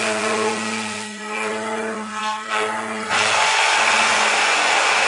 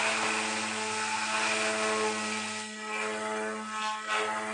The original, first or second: second